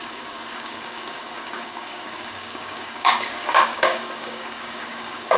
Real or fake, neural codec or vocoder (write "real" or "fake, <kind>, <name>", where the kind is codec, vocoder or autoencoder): fake, codec, DAC